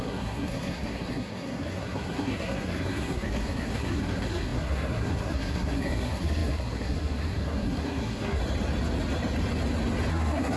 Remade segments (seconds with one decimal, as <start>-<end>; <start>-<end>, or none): 0.0-8.4; 10.1-10.6